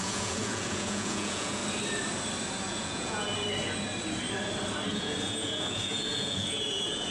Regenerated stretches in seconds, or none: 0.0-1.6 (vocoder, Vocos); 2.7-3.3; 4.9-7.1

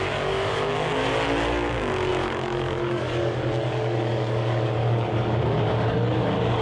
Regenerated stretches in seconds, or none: 0.0-1.0 (codec, DAC); 1.5-6.6

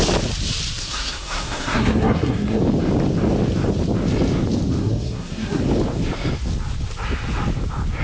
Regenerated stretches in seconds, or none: 0.8-2.6 (codec, SNAC); 4.8-5.6

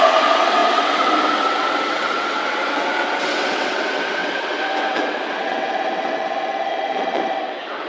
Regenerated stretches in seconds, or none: 0.0-7.9 (vocoder, WaveNeXt)